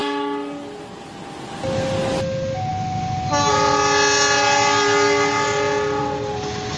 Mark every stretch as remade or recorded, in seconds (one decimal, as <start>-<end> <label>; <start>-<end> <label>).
0.0-6.8 recorded